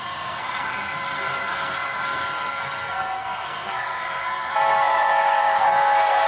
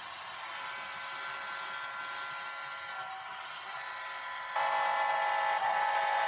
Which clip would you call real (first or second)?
second